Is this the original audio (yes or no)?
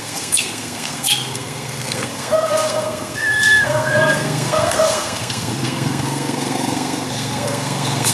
no